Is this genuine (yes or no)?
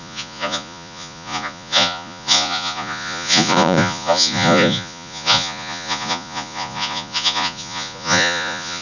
no